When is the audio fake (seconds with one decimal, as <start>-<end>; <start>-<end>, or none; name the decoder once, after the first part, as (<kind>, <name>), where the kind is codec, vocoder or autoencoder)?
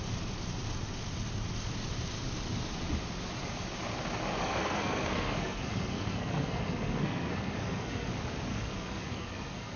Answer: 4.4-8.1 (codec, SNAC); 8.5-9.8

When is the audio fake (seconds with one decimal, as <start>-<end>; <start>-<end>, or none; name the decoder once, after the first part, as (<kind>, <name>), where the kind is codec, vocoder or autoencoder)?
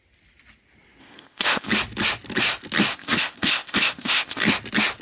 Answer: 1.0-1.7 (codec, ZipCodec); 2.9-4.4